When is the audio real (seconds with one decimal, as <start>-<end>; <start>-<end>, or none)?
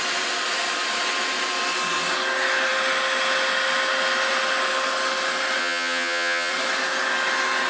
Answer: 0.0-5.6; 6.5-7.7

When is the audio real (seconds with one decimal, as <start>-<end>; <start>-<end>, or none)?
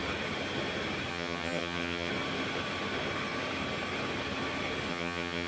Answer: 0.0-1.1; 2.1-4.9